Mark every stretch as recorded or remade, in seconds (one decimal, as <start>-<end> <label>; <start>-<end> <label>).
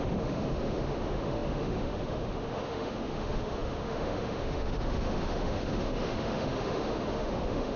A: 0.0-7.8 remade